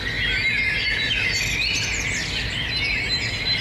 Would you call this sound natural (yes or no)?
yes